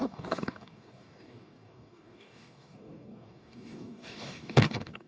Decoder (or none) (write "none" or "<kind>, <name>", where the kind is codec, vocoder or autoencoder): codec, DAC